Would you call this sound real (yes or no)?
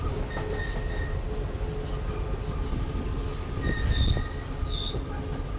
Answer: yes